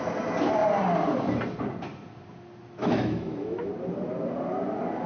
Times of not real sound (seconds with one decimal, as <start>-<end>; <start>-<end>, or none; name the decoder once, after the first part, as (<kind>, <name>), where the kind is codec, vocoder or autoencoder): 2.8-3.7 (autoencoder, DAC-VAE)

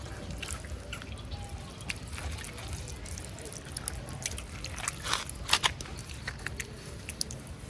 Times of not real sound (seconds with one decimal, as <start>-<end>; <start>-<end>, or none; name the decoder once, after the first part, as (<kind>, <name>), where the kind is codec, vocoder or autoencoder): none

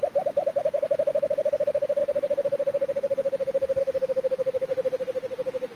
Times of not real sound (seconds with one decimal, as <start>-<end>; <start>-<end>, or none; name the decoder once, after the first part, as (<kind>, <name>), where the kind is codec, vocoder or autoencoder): 0.0-2.0 (autoencoder, DAC-VAE); 3.8-4.7

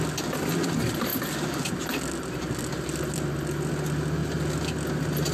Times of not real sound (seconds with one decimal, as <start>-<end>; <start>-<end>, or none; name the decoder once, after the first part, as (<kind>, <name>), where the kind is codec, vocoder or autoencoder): none

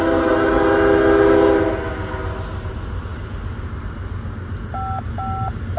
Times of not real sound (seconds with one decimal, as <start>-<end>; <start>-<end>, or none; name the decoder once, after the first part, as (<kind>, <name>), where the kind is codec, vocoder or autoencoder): none

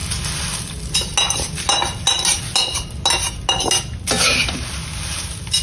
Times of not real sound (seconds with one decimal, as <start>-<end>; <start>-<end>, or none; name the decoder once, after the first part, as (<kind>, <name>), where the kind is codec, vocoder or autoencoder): none

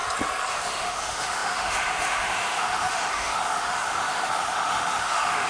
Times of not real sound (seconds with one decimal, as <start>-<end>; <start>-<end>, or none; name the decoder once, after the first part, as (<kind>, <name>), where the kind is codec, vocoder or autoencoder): 0.5-5.5 (autoencoder, DAC-VAE)

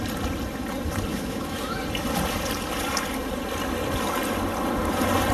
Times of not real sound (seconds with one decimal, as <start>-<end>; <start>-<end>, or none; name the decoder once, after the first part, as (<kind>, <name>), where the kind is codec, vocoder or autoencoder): 1.1-1.8 (autoencoder, DAC-VAE)